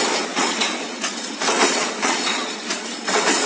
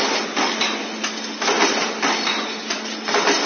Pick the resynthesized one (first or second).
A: first